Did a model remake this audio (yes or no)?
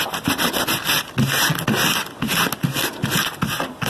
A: no